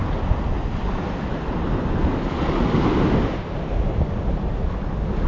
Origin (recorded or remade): recorded